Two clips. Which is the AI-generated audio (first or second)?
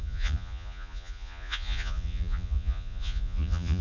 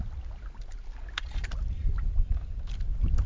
first